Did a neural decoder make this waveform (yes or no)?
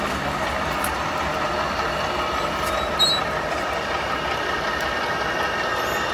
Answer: no